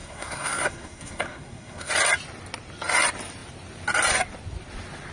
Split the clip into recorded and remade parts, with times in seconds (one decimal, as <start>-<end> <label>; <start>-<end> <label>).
0.0-1.9 remade; 1.9-5.1 recorded